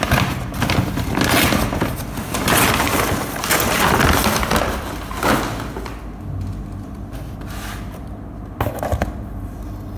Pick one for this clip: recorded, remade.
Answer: recorded